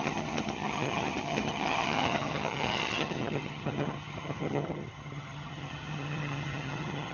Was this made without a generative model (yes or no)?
no